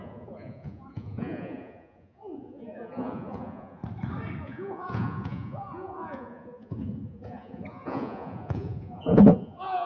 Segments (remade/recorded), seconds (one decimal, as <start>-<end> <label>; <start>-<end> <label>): 0.0-3.8 remade; 3.8-4.4 recorded; 4.4-9.9 remade